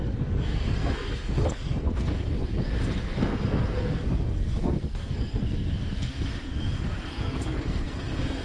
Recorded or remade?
remade